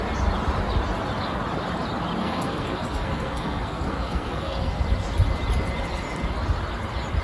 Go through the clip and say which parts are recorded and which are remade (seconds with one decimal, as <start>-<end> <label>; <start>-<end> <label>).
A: 0.0-2.2 recorded; 2.2-4.8 remade; 4.8-7.2 recorded